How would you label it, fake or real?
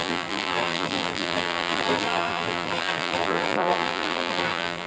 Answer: fake